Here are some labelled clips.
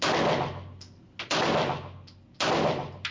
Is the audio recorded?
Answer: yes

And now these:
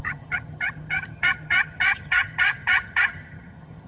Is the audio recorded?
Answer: no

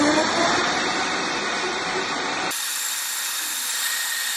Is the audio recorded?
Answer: no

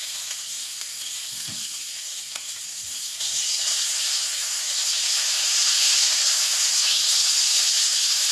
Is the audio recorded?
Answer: no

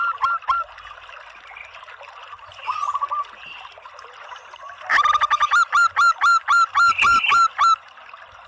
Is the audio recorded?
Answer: yes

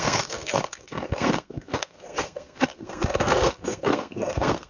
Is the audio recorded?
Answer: no